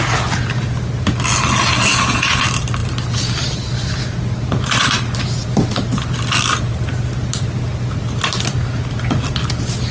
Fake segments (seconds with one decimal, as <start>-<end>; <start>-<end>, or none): 1.9-2.4